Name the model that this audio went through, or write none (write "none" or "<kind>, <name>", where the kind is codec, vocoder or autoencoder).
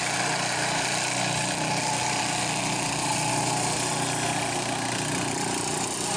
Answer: none